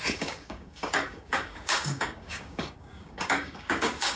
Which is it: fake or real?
fake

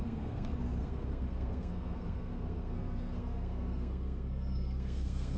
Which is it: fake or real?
fake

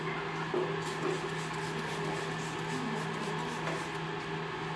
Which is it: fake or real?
real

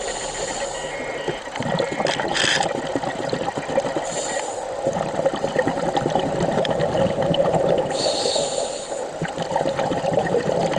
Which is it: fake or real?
real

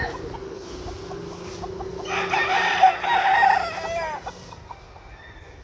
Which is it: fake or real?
real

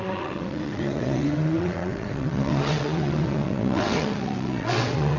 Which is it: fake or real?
fake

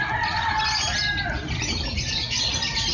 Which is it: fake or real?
real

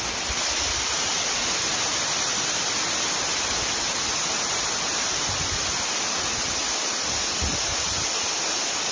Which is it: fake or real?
real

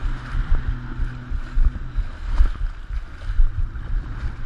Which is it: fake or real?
real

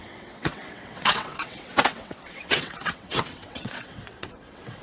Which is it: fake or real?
fake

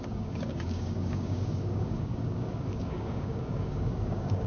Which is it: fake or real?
fake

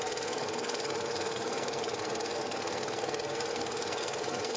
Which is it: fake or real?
fake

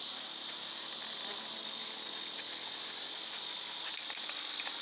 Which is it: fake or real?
real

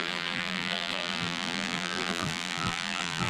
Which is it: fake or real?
fake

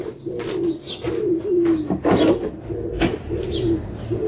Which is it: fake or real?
real